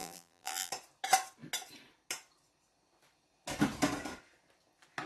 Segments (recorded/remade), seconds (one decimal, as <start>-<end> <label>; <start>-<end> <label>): 0.0-0.7 remade; 0.7-5.1 recorded

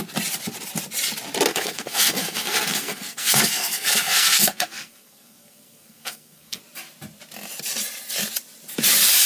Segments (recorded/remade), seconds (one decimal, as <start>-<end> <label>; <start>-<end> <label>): 0.0-1.5 recorded; 1.5-6.6 remade; 6.6-9.3 recorded

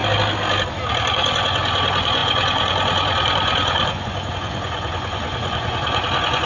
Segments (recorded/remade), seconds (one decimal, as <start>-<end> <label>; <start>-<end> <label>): 0.0-1.1 recorded; 1.1-6.5 remade

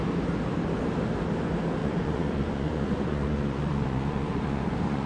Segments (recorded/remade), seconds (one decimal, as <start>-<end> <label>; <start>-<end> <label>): 0.0-1.8 recorded; 1.8-5.1 remade

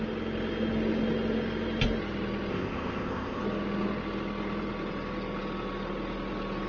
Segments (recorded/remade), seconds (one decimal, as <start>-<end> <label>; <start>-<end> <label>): 0.0-2.5 recorded; 2.5-3.4 remade; 3.4-6.7 recorded

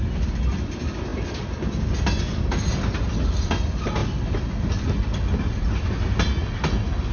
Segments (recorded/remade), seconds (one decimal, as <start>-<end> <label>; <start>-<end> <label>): 0.0-7.1 recorded

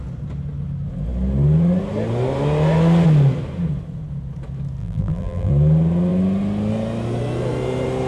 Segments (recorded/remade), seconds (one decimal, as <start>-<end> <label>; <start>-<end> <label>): 0.0-4.8 recorded; 4.8-5.5 remade; 5.5-8.1 recorded